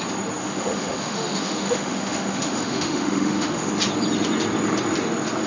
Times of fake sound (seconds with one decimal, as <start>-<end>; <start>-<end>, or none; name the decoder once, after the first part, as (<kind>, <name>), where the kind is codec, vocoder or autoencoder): 0.4-3.7 (autoencoder, DAC-VAE)